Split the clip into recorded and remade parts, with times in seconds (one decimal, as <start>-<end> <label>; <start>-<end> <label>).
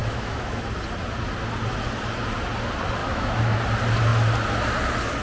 0.0-0.7 remade; 0.7-3.0 recorded; 3.0-3.6 remade; 3.6-5.2 recorded